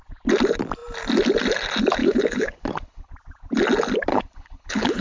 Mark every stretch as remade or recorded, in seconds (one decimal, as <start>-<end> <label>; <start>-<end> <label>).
0.0-2.0 recorded; 2.0-3.1 remade; 3.1-4.1 recorded; 4.1-5.0 remade